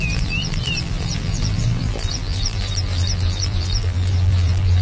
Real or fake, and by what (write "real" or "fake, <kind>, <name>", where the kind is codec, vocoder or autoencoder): fake, vocoder, BigVGAN v2